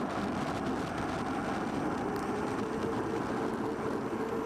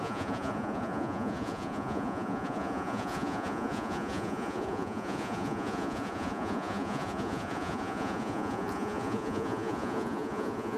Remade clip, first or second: second